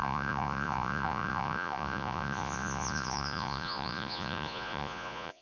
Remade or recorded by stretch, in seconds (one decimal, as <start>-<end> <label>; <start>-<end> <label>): 0.0-5.4 remade